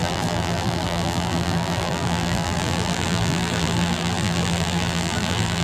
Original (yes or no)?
no